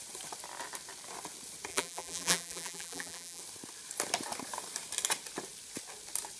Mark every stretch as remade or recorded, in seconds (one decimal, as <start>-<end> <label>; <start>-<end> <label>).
0.0-1.7 recorded; 1.7-3.4 remade; 3.4-6.4 recorded